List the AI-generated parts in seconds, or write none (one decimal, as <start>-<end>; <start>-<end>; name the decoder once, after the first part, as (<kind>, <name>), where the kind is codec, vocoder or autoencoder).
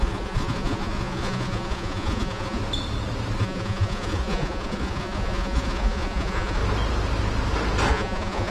0.0-2.6 (vocoder, Vocos); 3.4-6.6; 7.9-8.5